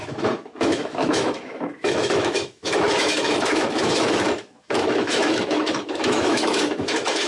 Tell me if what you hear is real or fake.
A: fake